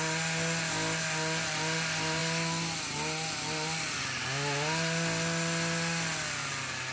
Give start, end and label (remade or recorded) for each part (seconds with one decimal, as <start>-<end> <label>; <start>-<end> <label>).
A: 0.0-6.9 recorded